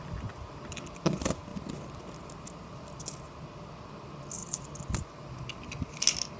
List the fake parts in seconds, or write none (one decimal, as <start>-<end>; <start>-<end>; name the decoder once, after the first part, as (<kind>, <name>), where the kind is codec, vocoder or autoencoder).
none